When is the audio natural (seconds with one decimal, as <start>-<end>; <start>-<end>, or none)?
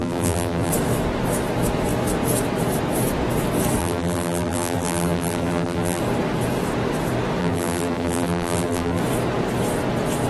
0.7-3.8; 6.0-7.4; 9.0-10.3